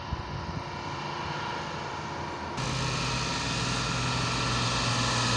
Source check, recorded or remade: recorded